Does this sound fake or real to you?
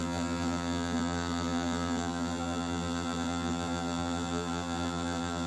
fake